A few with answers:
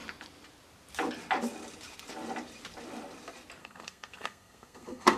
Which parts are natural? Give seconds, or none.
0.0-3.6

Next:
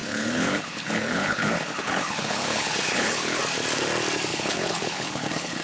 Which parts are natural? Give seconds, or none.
3.4-4.3

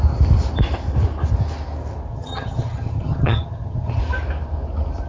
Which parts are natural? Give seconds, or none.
0.0-2.1; 4.0-5.1

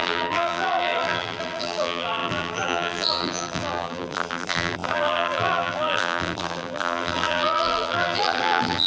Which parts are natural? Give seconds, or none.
none

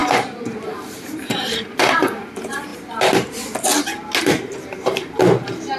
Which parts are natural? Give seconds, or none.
2.7-4.2

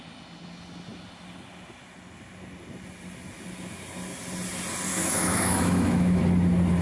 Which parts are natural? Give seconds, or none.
0.0-4.9; 6.2-6.8